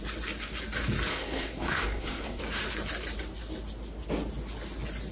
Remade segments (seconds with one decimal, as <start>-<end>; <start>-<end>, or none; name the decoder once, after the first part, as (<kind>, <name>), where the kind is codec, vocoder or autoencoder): 1.1-2.4 (codec, SNAC)